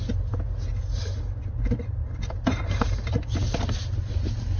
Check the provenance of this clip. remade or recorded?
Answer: recorded